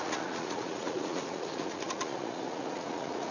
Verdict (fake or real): fake